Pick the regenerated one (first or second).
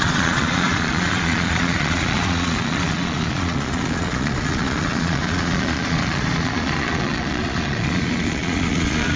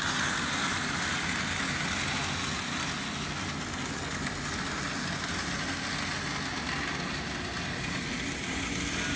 first